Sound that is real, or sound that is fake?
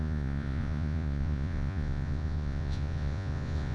fake